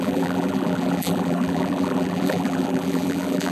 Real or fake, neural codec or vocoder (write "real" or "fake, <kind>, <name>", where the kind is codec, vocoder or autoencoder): fake, vocoder, BigVGAN v2